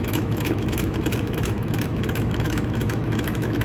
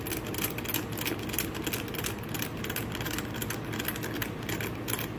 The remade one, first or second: first